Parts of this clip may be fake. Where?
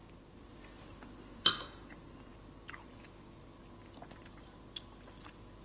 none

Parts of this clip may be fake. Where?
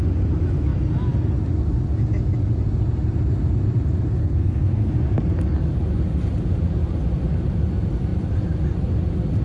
4.2-4.9 (codec, SNAC)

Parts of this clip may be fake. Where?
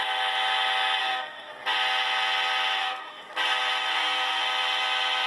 1.0-1.5 (codec, SNAC); 2.8-3.3; 3.9-4.4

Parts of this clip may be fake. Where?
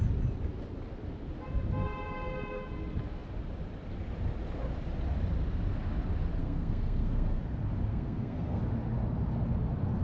6.4-7.4 (codec, SNAC); 7.9-8.6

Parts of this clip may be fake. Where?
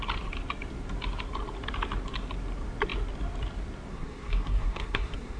3.9-5.4 (codec, SNAC)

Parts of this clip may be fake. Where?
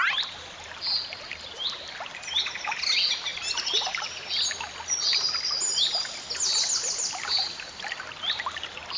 none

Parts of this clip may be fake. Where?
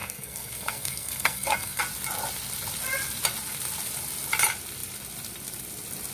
0.0-1.8 (codec, SNAC)